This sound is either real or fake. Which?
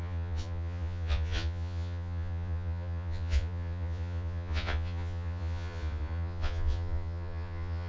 fake